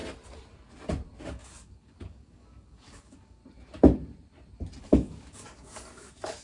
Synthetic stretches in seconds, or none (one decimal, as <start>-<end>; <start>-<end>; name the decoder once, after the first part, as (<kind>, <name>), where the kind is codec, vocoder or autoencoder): 1.2-3.4 (codec, DAC); 4.8-6.4